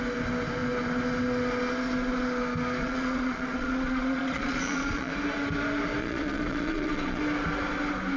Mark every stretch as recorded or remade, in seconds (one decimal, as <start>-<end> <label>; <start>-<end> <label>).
0.0-2.8 recorded; 2.8-5.1 remade; 5.1-6.0 recorded; 6.0-7.2 remade; 7.2-8.2 recorded